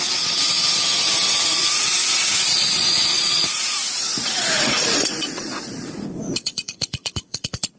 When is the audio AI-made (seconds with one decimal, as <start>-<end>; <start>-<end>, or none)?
0.0-7.8